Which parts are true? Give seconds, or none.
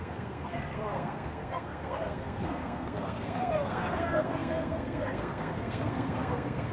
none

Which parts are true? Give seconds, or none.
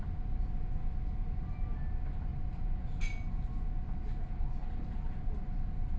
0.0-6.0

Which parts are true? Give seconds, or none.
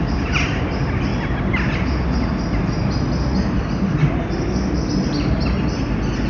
0.0-6.3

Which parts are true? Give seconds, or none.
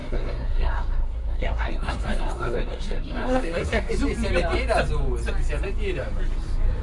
3.9-6.8